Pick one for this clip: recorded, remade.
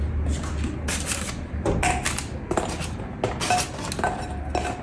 recorded